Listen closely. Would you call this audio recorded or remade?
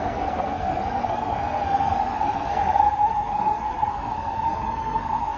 remade